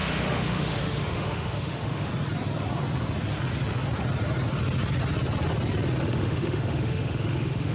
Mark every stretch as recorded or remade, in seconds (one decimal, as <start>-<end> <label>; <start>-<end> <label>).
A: 0.0-2.1 remade; 2.1-6.0 recorded; 6.0-7.7 remade